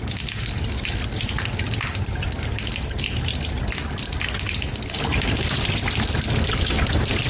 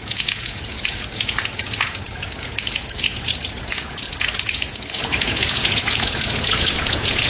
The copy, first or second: second